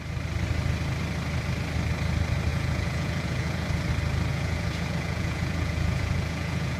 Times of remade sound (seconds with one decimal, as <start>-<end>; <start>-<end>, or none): 2.5-3.9; 4.3-6.8